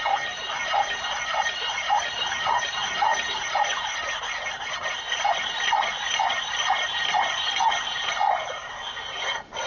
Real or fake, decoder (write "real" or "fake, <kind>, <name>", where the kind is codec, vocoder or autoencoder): real